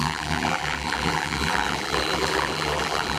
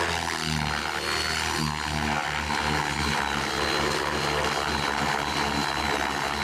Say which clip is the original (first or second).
second